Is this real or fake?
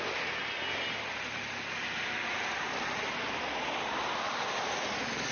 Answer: real